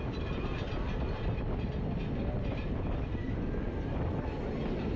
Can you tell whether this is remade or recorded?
recorded